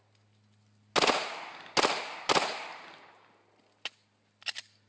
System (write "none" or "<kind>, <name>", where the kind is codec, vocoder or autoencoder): none